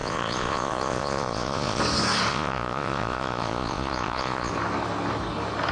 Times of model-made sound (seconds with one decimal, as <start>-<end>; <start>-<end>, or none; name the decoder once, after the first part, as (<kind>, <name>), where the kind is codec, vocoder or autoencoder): 0.0-1.8 (vocoder, Vocos); 2.3-4.5